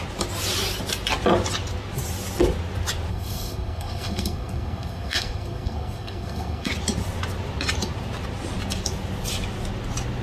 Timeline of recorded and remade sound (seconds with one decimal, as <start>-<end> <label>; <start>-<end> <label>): 0.0-3.1 recorded; 3.1-6.7 remade; 6.7-10.2 recorded